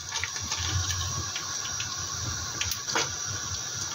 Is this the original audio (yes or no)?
yes